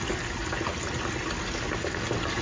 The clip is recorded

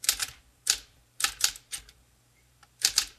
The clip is remade